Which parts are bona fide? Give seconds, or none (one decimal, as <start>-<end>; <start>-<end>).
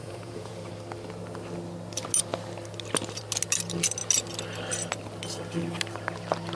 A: 0.7-6.6